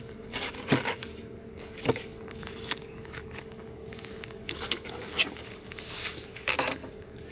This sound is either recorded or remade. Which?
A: remade